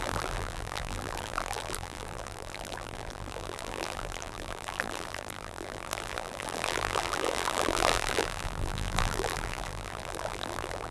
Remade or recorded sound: remade